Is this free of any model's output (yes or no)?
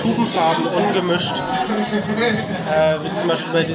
yes